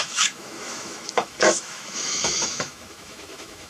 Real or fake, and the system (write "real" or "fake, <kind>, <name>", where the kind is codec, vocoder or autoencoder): fake, autoencoder, DAC-VAE